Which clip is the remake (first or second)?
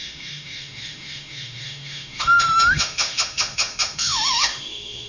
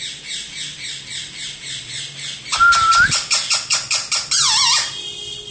first